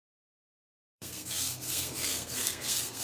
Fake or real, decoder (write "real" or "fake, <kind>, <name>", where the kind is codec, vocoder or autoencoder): fake, codec, SNAC